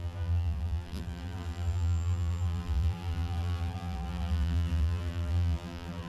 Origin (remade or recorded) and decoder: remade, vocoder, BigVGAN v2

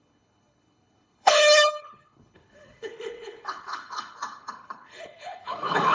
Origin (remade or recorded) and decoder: remade, codec, HILCodec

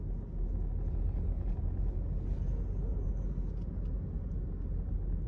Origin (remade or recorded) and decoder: recorded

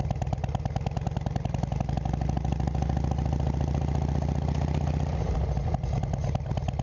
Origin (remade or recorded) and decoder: recorded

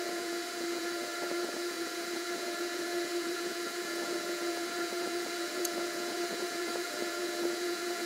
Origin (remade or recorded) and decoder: remade, vocoder, Vocos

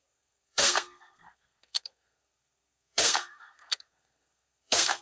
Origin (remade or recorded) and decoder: remade, codec, SNAC